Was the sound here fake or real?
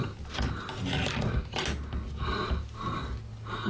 real